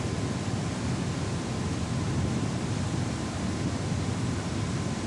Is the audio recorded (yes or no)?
yes